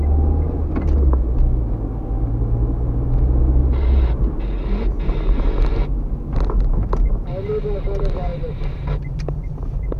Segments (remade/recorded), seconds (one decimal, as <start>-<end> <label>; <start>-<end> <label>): 0.0-3.6 recorded; 3.6-4.2 remade; 4.2-8.3 recorded; 8.3-10.0 remade